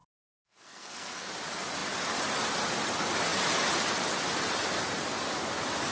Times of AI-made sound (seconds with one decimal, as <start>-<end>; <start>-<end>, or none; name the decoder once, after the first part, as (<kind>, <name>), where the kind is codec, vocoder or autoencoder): 0.0-1.3 (codec, SNAC)